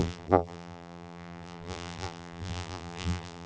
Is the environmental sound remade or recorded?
remade